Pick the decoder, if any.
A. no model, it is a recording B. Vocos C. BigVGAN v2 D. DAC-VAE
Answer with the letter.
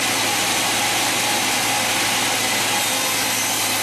A